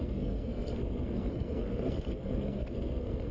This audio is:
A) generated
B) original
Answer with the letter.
A